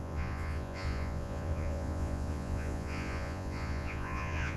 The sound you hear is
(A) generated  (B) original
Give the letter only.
A